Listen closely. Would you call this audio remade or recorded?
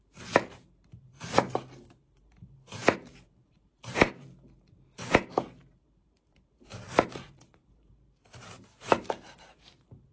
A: remade